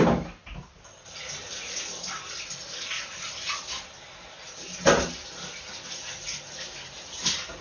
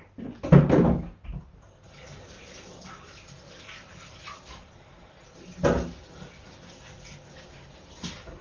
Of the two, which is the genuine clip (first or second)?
second